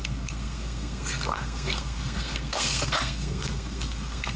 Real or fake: fake